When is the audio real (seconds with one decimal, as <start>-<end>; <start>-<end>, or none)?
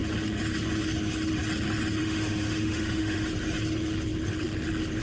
0.0-2.0; 3.3-5.0